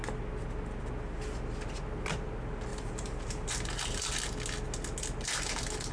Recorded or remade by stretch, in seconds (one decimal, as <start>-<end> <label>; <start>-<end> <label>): 0.0-2.7 recorded; 2.7-4.0 remade; 4.0-5.9 recorded